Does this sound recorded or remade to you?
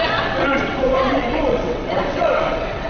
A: remade